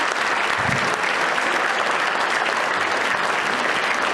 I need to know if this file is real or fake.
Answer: real